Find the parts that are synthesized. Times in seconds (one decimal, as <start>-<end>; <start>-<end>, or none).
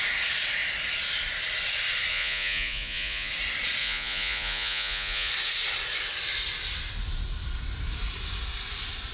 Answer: 2.1-3.3; 3.8-5.3